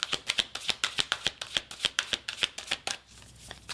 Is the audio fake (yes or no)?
no